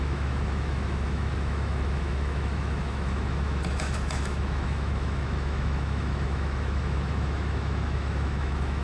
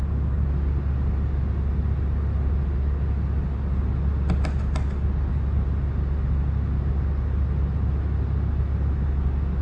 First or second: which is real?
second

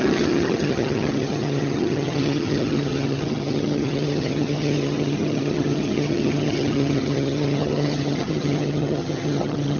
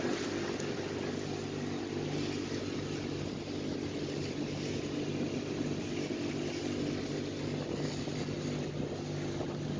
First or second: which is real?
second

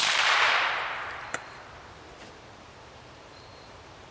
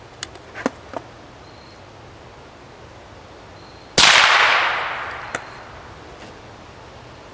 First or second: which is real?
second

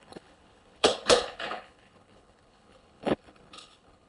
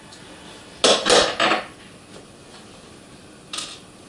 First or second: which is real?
second